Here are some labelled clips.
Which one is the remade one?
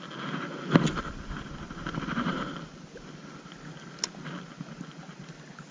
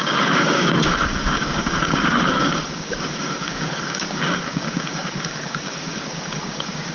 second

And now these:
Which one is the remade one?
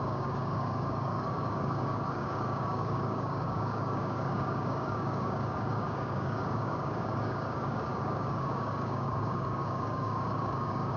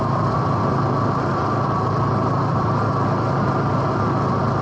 first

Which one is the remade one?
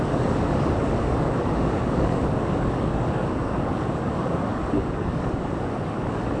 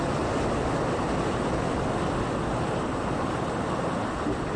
first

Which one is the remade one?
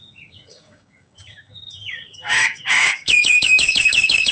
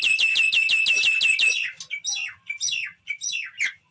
first